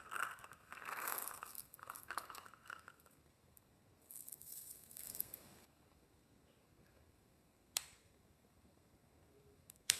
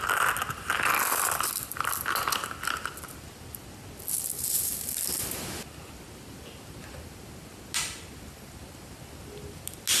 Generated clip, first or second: first